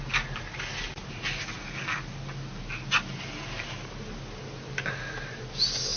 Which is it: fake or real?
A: real